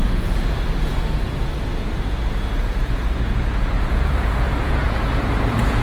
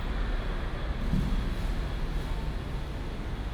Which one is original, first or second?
second